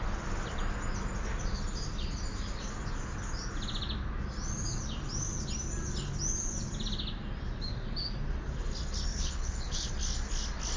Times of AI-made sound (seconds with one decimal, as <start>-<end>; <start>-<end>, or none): 9.1-9.9